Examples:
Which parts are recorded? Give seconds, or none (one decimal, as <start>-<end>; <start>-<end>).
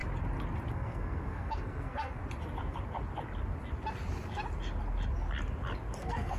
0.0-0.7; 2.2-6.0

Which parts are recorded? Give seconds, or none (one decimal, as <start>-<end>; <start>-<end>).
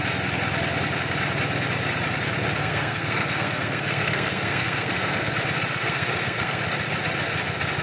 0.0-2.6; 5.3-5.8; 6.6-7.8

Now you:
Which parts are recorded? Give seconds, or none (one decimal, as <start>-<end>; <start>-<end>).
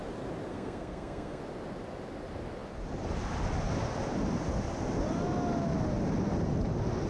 0.0-0.5; 1.4-7.1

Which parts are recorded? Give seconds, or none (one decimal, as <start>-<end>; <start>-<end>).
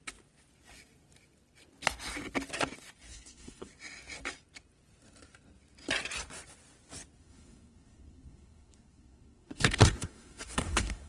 0.0-3.1; 3.7-7.2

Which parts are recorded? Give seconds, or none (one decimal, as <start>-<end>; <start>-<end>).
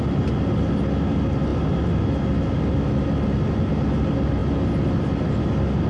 0.0-5.9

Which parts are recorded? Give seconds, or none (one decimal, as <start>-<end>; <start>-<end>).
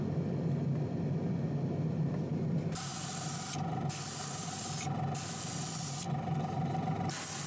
0.0-7.5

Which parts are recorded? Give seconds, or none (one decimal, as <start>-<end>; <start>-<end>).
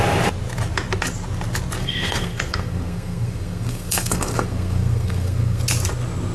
0.0-1.8; 5.6-6.3